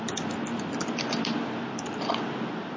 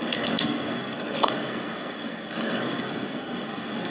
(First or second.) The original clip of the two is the first